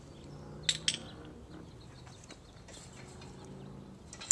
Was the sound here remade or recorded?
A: recorded